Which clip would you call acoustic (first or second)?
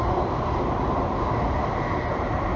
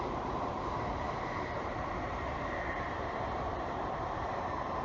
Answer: first